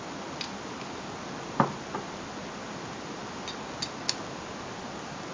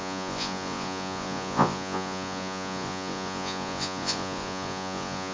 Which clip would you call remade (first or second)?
second